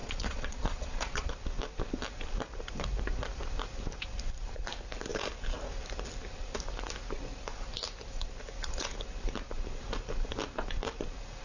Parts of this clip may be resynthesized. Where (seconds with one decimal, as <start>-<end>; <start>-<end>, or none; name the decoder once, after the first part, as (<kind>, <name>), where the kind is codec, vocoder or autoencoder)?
0.0-1.3 (vocoder, Vocos)